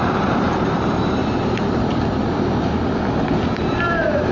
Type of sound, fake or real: fake